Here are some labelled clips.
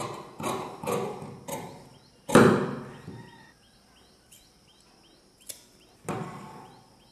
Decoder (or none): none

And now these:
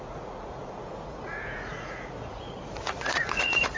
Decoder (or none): vocoder, Vocos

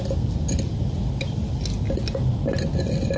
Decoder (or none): none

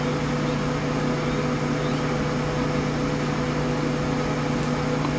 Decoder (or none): none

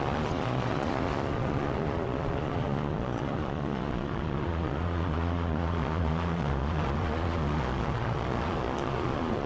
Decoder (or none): vocoder, Vocos